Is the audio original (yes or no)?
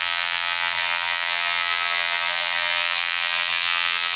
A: no